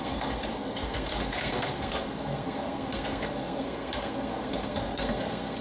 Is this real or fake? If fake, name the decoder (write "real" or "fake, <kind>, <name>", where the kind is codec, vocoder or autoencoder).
fake, codec, SNAC